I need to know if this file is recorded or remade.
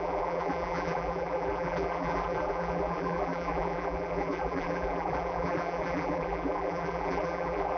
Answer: remade